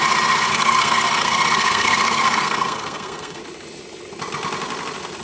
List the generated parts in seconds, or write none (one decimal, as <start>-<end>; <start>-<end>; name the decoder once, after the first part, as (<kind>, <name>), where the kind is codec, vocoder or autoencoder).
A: 0.5-3.4 (codec, SNAC)